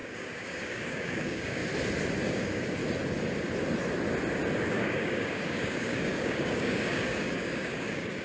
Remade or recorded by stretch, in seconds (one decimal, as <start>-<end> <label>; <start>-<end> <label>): 0.0-1.6 remade; 1.6-2.2 recorded; 2.2-2.8 remade; 2.8-4.7 recorded; 4.7-8.2 remade